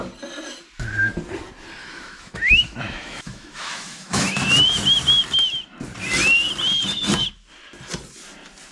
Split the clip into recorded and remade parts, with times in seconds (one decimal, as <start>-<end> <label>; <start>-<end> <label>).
0.0-1.8 recorded; 1.8-4.4 remade; 4.4-8.7 recorded